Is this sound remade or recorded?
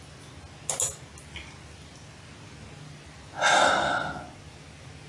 recorded